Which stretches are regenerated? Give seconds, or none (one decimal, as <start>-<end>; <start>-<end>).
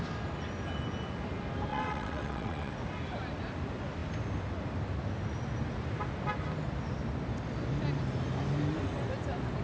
1.7-2.7